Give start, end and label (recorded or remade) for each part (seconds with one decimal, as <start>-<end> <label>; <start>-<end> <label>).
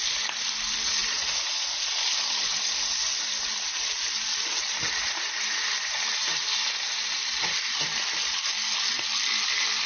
0.0-1.0 recorded; 1.0-2.2 remade; 2.2-3.5 recorded; 3.5-8.2 remade; 8.2-9.9 recorded